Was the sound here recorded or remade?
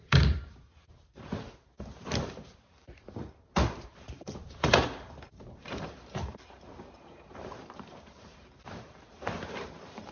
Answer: remade